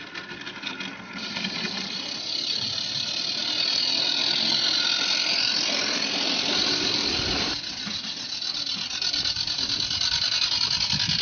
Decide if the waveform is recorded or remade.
recorded